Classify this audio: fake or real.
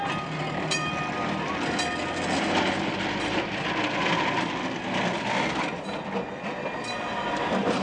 real